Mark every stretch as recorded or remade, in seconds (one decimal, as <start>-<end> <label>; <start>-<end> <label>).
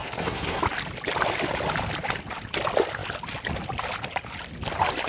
0.0-0.6 remade; 0.6-5.1 recorded